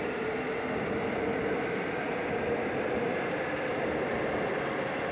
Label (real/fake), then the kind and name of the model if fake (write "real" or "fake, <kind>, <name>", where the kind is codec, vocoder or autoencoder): real